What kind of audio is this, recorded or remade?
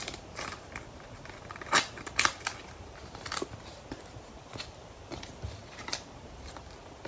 recorded